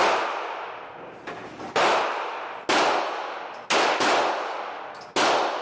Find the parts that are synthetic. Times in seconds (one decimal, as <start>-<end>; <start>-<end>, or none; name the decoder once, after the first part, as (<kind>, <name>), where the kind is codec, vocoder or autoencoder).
none